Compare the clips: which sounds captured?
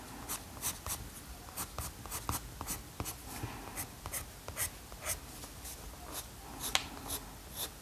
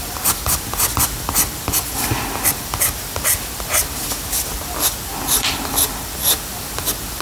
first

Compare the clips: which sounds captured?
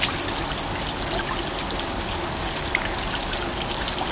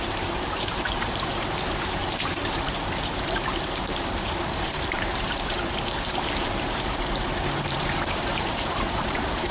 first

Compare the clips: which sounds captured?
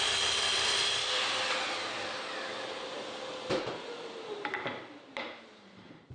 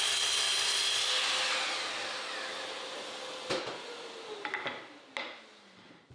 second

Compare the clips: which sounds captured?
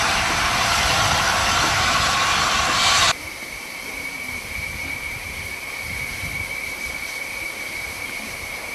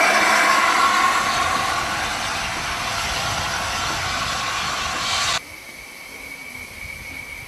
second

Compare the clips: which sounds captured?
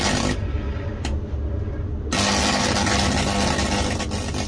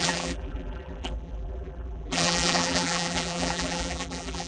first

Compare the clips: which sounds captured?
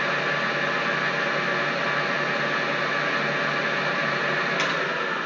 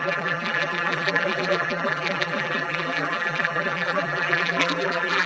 first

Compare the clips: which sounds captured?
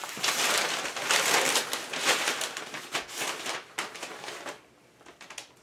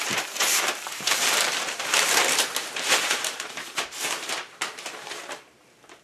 first